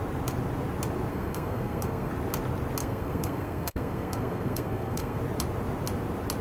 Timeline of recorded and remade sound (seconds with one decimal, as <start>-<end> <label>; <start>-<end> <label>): 0.0-1.1 recorded; 1.1-2.1 remade; 2.1-2.8 recorded; 2.8-5.2 remade; 5.2-6.4 recorded